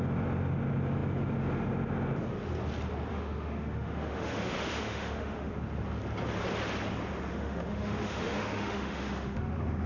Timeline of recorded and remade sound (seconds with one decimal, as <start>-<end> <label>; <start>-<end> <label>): 0.0-3.1 recorded; 3.1-5.5 remade; 5.5-7.3 recorded; 7.3-9.9 remade

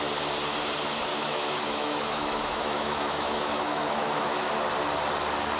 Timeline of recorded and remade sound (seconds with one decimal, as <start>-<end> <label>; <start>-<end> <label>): 0.0-1.1 recorded; 1.1-4.5 remade; 4.5-5.6 recorded

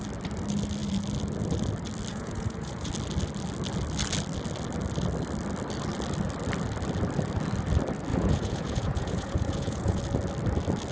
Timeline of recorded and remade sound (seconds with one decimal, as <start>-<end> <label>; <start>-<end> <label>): 0.0-2.1 recorded; 2.1-2.9 remade; 2.9-8.1 recorded; 8.1-10.0 remade; 10.0-10.9 recorded

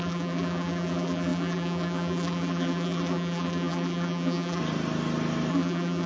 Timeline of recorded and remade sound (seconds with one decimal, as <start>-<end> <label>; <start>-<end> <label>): 0.0-4.6 remade; 4.6-5.5 recorded; 5.5-6.1 remade